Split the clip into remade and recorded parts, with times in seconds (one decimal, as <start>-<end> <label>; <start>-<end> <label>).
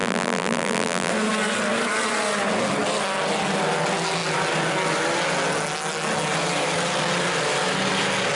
0.0-1.1 remade; 1.1-8.4 recorded